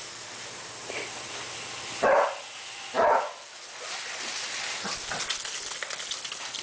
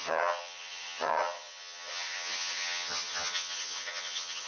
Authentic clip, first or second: first